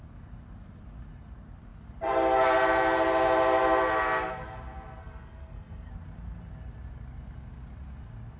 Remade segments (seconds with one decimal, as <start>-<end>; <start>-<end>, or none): 5.0-5.9